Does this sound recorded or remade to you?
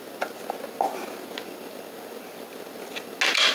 recorded